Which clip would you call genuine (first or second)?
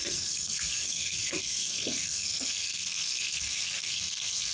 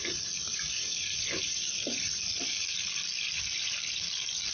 second